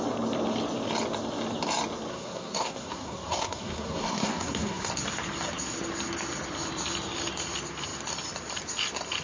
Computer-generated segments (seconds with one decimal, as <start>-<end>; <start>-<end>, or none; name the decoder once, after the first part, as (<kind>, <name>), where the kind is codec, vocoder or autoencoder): 2.1-4.9 (codec, SNAC)